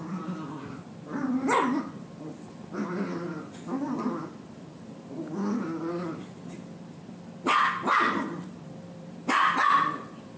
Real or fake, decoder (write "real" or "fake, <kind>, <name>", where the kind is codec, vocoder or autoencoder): fake, vocoder, BigVGAN v2